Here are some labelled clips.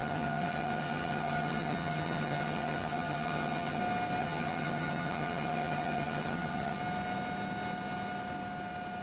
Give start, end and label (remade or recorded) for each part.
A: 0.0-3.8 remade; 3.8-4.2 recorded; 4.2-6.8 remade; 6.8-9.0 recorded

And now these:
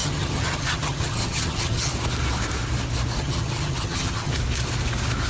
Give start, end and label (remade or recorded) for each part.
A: 0.0-1.9 remade; 1.9-3.2 recorded; 3.2-4.3 remade; 4.3-5.3 recorded

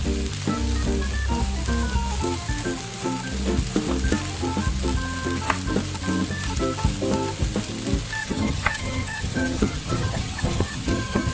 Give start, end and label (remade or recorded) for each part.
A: 0.0-8.2 recorded; 8.2-11.3 remade

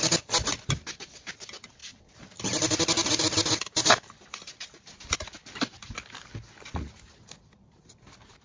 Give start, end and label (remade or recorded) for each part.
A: 0.0-8.4 recorded

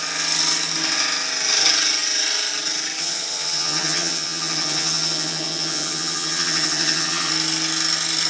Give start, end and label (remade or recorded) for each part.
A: 0.0-3.0 recorded; 3.0-7.3 remade; 7.3-8.3 recorded